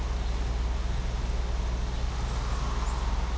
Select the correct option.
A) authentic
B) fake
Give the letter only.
A